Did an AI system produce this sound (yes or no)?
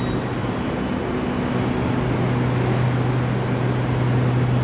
no